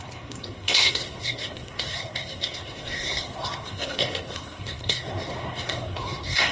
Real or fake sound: fake